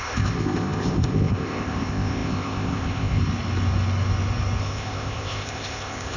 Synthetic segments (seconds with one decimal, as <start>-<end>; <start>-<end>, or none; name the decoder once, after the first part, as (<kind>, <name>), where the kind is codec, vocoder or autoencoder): 0.0-3.2 (codec, ZipCodec); 4.6-6.2